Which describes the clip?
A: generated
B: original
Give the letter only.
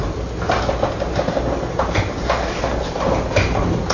B